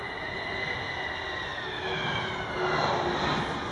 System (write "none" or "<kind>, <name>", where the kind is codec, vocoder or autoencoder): none